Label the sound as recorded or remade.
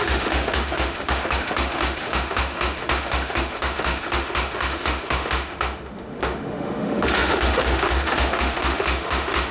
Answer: remade